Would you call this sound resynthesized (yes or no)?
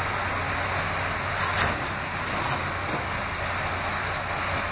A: no